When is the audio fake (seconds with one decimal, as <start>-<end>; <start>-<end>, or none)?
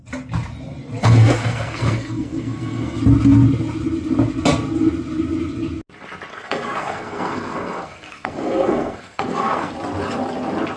1.0-3.0; 6.3-9.7